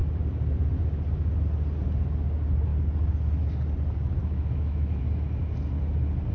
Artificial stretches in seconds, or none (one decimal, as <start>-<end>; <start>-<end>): 4.2-5.0